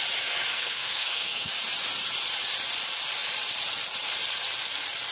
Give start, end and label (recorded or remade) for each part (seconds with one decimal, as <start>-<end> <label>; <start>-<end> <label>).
0.0-0.5 recorded; 0.5-1.5 remade; 1.5-5.1 recorded

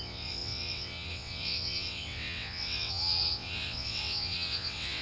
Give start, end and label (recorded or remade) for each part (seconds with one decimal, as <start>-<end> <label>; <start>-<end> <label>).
0.0-5.0 remade

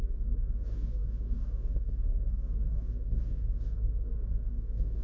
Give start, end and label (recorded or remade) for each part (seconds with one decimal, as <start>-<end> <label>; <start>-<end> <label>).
0.0-5.0 remade

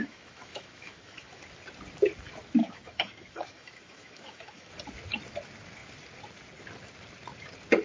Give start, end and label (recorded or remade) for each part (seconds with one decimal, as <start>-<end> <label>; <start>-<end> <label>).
0.0-1.4 remade; 1.4-2.6 recorded; 2.6-4.7 remade; 4.7-7.8 recorded

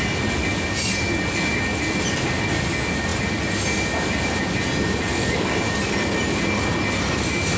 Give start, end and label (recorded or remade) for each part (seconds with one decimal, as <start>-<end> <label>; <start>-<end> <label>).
0.0-5.1 recorded; 5.1-5.6 remade; 5.6-7.6 recorded